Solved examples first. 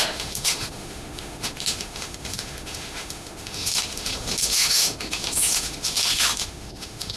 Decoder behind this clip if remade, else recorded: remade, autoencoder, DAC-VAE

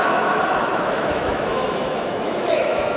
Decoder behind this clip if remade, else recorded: remade, autoencoder, DAC-VAE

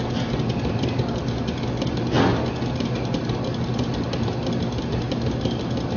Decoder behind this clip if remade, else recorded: recorded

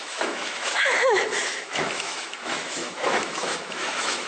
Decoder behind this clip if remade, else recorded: remade, autoencoder, DAC-VAE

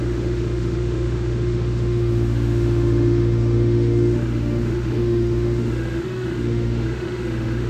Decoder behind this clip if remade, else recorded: remade, autoencoder, DAC-VAE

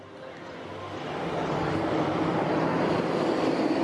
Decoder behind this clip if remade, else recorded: recorded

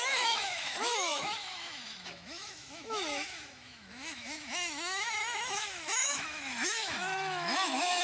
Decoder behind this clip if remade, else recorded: remade, autoencoder, DAC-VAE